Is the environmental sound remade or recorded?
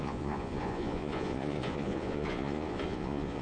remade